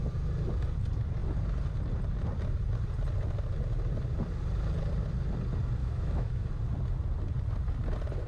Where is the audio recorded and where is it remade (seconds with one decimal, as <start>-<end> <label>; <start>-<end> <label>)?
0.0-5.8 recorded; 5.8-6.5 remade; 6.5-8.3 recorded